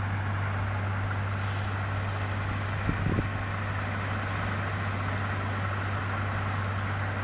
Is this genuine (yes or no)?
yes